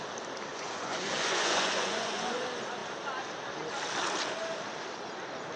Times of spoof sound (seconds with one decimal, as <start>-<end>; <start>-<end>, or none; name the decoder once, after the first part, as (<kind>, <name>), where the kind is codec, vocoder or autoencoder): 0.5-2.4 (vocoder, Vocos)